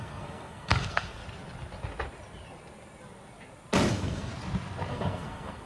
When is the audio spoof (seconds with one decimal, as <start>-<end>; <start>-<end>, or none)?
0.0-1.2; 3.9-4.3; 4.9-5.7

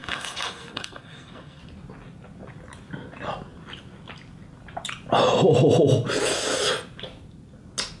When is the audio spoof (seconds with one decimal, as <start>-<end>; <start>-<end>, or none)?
0.0-1.6